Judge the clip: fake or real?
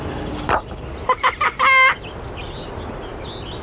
real